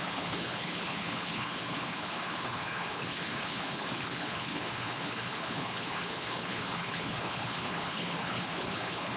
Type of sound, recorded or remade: remade